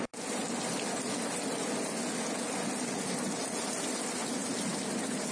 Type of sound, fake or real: real